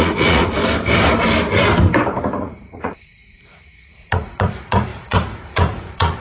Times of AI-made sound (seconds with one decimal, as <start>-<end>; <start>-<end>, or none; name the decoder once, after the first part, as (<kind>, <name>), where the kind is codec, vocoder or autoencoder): 0.0-0.6 (vocoder, Vocos); 2.4-6.2